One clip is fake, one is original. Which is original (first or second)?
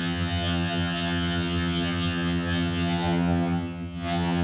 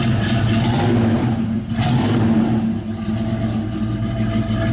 second